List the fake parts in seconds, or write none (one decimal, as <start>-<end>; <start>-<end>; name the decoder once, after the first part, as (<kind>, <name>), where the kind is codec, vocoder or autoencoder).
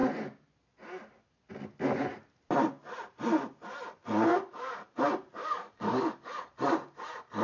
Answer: 4.3-5.0 (codec, DAC); 5.4-6.4